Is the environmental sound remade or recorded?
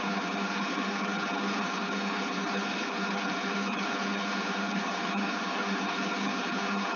remade